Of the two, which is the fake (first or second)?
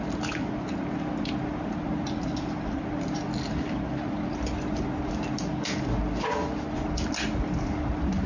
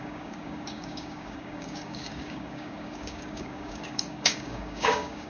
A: second